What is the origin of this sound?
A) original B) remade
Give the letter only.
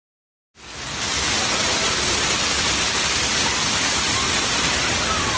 A